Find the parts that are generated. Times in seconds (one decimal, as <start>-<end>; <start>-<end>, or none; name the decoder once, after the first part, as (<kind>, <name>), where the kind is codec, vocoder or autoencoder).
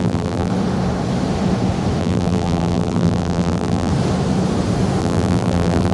0.0-0.5 (vocoder, BigVGAN v2); 2.0-3.9; 5.0-5.9